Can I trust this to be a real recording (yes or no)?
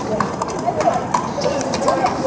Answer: yes